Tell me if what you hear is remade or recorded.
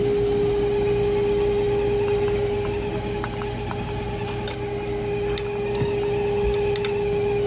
recorded